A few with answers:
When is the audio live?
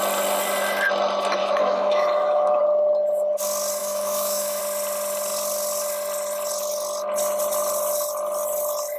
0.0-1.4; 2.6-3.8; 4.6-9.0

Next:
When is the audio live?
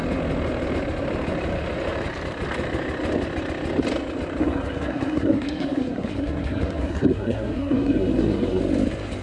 0.0-4.4; 8.6-9.2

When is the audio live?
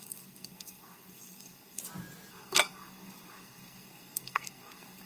1.8-2.3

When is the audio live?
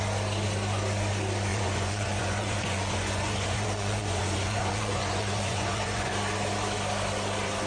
0.0-1.5; 6.1-7.7